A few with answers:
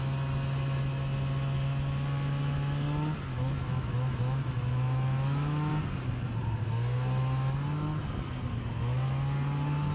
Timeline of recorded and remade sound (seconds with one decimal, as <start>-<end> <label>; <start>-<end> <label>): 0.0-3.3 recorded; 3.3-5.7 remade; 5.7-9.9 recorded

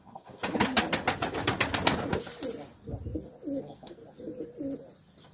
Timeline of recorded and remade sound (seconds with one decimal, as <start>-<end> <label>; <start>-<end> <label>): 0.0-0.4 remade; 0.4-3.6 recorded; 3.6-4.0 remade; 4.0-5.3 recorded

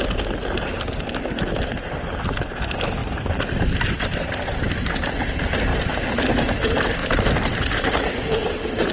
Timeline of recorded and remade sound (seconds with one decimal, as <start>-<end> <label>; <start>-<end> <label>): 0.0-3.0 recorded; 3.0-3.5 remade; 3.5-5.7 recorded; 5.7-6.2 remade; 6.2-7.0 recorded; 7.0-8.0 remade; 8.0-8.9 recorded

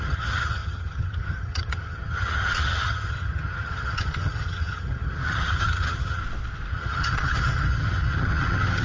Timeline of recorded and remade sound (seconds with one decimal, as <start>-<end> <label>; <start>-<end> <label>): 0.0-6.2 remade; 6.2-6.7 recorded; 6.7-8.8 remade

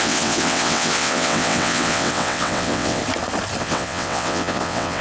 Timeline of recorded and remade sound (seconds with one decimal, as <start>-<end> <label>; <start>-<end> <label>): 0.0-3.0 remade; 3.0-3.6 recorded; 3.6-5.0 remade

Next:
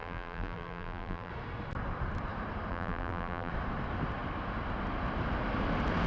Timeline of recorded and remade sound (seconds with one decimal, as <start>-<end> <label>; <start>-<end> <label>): 0.0-1.3 remade; 1.3-2.7 recorded; 2.7-3.5 remade; 3.5-6.1 recorded

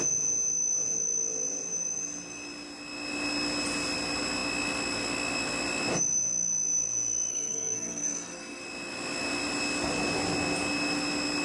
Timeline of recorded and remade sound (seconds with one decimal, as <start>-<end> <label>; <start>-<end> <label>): 0.0-7.3 recorded; 7.3-8.6 remade; 8.6-11.4 recorded